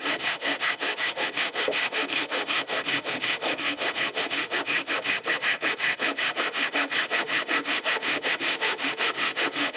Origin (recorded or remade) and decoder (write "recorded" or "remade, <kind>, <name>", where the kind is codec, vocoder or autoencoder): remade, autoencoder, DAC-VAE